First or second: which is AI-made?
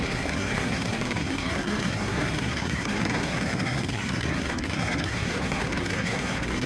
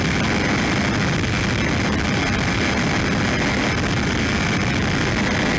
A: first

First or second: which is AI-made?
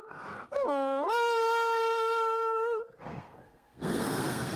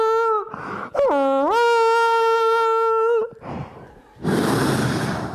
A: first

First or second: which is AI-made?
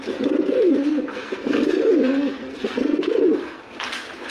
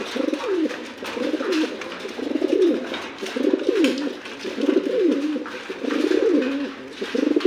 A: first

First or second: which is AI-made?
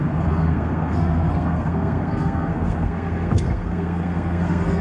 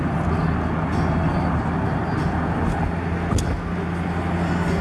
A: first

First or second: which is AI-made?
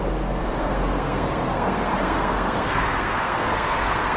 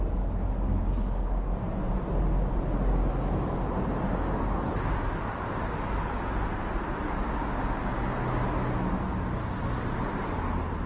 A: first